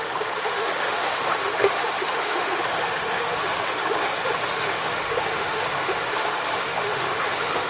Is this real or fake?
fake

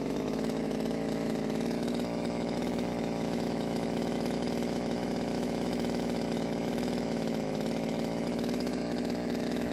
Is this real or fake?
fake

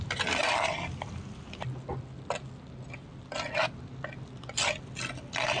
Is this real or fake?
real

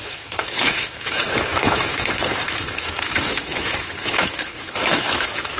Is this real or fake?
fake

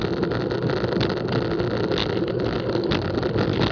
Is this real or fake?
real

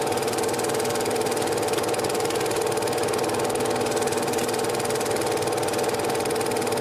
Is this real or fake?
real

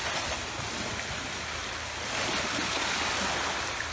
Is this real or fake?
real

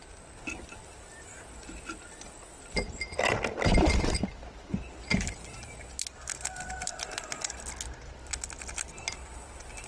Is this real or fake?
real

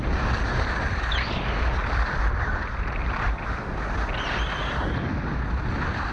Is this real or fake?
real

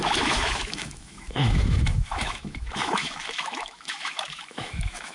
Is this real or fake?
fake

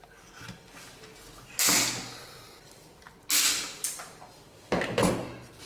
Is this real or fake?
real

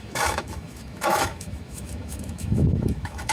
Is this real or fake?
fake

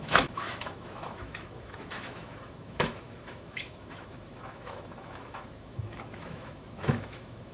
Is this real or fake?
fake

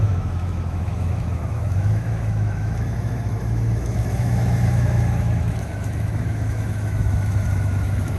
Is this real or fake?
fake